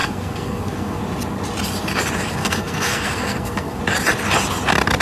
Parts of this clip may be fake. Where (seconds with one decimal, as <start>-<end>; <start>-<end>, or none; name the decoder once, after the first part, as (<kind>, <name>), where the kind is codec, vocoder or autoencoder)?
0.0-1.0 (codec, SNAC); 2.4-3.8